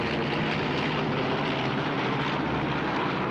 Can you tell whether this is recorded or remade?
recorded